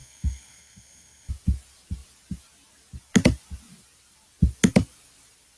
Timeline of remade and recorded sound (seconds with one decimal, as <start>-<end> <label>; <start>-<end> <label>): 0.0-1.3 remade; 1.3-5.6 recorded